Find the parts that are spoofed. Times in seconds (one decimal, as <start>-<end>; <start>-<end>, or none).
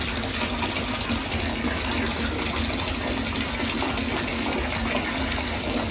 none